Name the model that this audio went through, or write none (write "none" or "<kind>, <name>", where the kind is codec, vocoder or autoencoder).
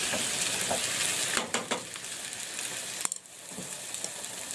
none